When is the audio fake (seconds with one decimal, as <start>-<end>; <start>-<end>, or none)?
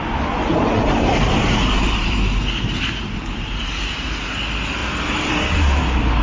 0.5-4.2; 4.8-5.8